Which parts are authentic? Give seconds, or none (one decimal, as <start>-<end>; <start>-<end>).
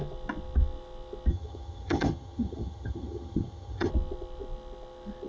0.0-1.3; 3.9-5.3